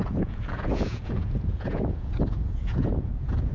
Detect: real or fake fake